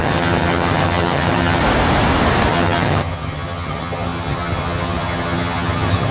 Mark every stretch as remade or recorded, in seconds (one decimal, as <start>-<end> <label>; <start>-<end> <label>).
0.0-1.6 remade; 1.6-2.5 recorded; 2.5-6.1 remade